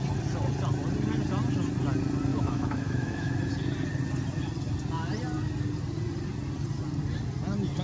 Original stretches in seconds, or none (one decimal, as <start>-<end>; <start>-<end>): 0.0-2.3; 3.5-7.8